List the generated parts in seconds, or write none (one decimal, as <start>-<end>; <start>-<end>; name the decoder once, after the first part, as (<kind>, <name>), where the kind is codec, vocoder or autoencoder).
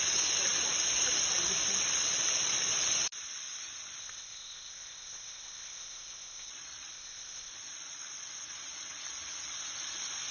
4.0-6.5 (codec, ZipCodec); 6.9-7.5